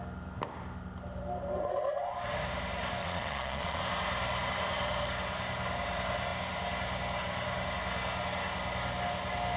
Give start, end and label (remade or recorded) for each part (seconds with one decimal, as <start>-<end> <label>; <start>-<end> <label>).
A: 0.0-3.0 recorded; 3.0-3.8 remade; 3.8-9.6 recorded